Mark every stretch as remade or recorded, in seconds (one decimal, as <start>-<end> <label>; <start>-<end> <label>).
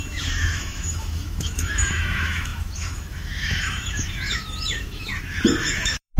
0.0-5.1 remade; 5.1-5.6 recorded; 5.6-6.2 remade